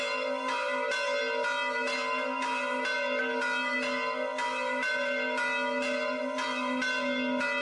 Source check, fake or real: real